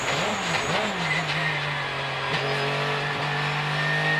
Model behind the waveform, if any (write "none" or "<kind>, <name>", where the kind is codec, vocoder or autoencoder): none